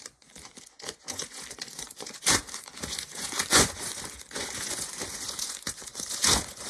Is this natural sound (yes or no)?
no